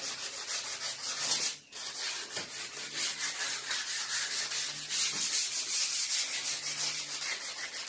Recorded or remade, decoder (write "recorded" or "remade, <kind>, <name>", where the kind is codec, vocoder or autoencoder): recorded